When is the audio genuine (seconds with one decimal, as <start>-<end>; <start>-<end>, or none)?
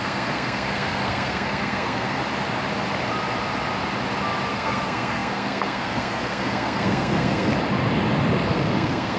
2.2-4.5; 7.5-8.5